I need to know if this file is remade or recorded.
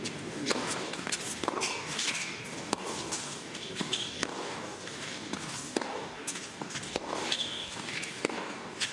remade